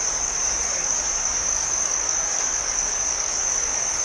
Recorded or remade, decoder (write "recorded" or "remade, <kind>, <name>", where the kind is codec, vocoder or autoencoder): remade, codec, DAC